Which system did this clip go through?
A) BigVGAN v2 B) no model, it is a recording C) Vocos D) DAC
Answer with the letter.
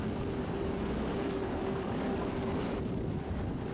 D